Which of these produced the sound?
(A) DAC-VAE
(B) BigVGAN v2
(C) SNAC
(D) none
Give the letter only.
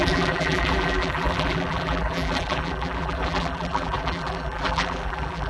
B